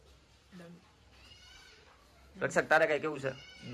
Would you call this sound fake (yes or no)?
yes